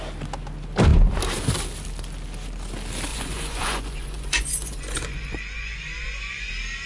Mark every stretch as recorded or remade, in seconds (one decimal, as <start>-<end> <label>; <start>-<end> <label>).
0.0-3.1 recorded; 3.1-6.5 remade; 6.5-6.9 recorded